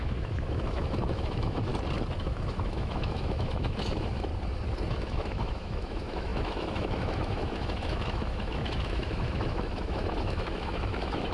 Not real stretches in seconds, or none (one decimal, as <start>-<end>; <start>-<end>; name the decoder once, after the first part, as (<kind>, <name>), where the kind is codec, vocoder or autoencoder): 0.0-1.7 (autoencoder, DAC-VAE); 2.2-4.3; 4.9-11.3

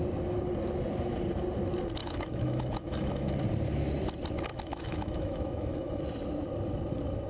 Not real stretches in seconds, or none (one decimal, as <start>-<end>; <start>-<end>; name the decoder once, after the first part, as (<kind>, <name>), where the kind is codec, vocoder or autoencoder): 2.0-3.3 (autoencoder, DAC-VAE); 4.5-6.0

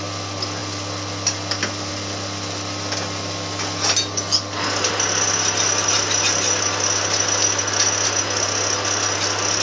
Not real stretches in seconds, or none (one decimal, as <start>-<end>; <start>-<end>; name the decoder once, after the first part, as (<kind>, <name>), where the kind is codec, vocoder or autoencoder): none

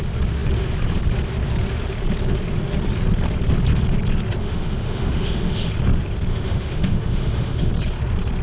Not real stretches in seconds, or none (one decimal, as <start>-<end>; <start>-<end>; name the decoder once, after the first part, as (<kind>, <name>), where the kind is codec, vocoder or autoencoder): 4.4-5.7 (autoencoder, DAC-VAE); 6.3-7.7

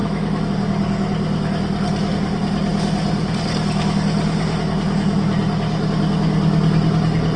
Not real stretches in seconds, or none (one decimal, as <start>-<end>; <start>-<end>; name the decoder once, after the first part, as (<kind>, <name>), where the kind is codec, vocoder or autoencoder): 0.0-0.5 (autoencoder, DAC-VAE)